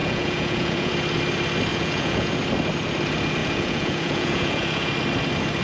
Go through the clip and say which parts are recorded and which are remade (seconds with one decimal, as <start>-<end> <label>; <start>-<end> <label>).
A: 0.0-0.9 remade; 0.9-1.7 recorded; 1.7-2.4 remade; 2.4-3.4 recorded; 3.4-4.9 remade; 4.9-5.6 recorded